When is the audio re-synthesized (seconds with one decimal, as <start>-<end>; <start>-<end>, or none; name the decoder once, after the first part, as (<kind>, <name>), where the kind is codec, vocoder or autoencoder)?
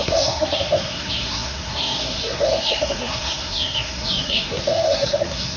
0.0-5.6 (codec, SNAC)